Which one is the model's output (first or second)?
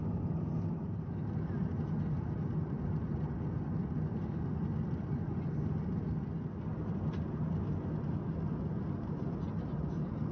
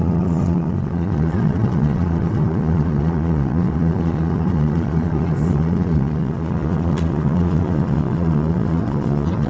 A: second